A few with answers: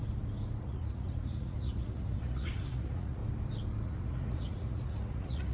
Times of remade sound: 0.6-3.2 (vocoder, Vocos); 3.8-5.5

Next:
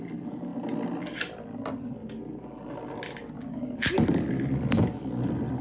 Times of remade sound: none

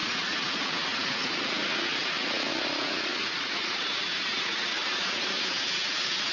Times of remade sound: 0.0-0.5 (vocoder, Vocos); 3.2-5.3

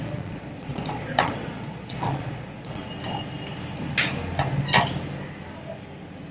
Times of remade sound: 0.0-2.8 (vocoder, Vocos)

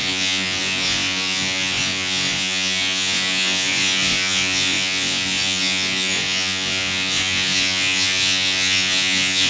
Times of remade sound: 0.0-9.5 (vocoder, Vocos)